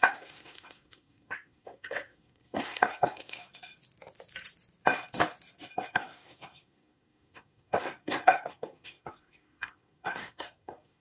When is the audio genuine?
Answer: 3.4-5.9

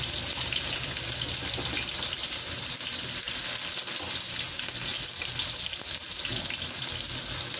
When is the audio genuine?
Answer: 0.0-7.6

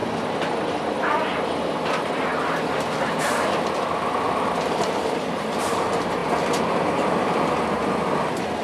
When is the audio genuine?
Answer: 0.0-1.0; 6.2-7.4

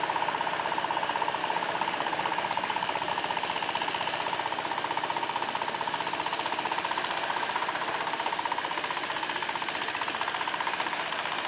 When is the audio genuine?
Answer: 0.0-1.4; 3.1-11.5

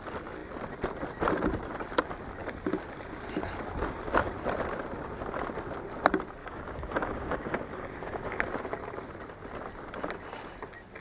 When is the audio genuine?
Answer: 0.0-6.4; 8.4-11.0

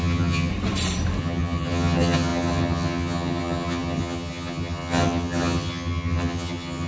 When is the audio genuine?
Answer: 0.5-1.2

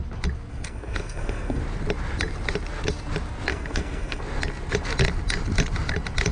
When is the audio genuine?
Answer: 0.0-0.5; 1.6-3.5; 4.2-6.3

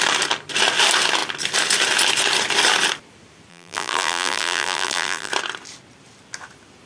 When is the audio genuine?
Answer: 0.0-3.5; 5.3-6.9